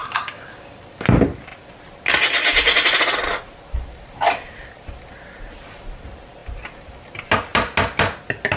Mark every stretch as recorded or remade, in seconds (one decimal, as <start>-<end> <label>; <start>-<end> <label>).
0.0-0.8 remade; 0.8-8.6 recorded